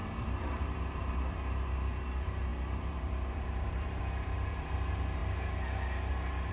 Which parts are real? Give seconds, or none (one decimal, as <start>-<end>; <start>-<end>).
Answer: 5.2-6.5